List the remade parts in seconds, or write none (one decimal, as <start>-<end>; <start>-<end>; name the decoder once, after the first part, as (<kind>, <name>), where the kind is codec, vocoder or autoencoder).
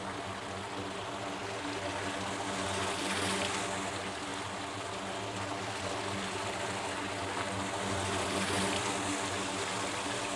none